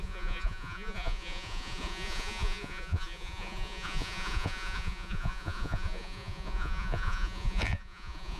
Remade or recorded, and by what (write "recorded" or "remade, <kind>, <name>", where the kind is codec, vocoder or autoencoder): remade, vocoder, Vocos